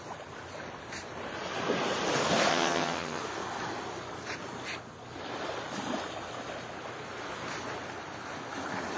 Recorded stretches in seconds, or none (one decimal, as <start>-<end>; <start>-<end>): 0.0-2.5; 3.2-9.0